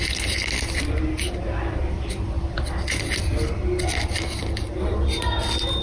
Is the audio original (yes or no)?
yes